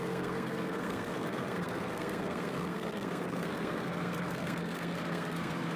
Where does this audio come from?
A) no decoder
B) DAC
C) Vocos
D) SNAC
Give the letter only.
D